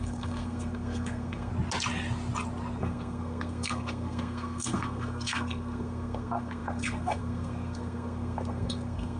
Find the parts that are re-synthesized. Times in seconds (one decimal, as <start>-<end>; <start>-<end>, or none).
0.0-1.5; 2.8-9.2